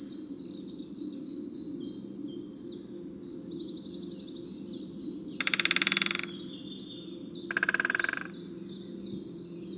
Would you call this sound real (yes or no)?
yes